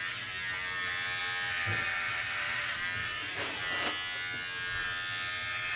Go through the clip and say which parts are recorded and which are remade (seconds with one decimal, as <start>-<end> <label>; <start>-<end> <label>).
0.0-3.0 recorded; 3.0-3.6 remade; 3.6-5.8 recorded